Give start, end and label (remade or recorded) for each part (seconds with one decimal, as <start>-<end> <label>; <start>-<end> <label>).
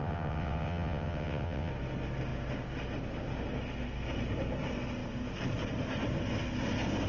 0.0-1.7 remade; 1.7-7.1 recorded